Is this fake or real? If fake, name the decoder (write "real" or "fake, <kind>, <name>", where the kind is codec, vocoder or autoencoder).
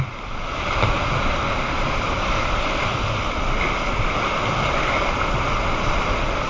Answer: real